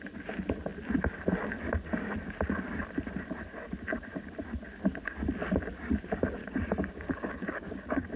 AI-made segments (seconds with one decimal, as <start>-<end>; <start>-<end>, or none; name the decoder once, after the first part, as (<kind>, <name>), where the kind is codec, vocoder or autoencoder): 6.4-8.2 (codec, DAC)